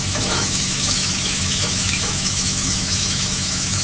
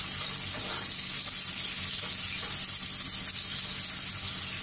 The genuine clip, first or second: second